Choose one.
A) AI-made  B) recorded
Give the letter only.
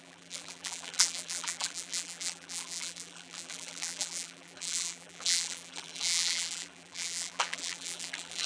A